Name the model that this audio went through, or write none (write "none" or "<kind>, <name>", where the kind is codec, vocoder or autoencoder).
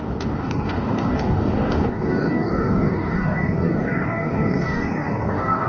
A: codec, DAC